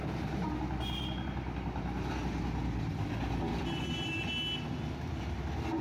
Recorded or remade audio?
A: recorded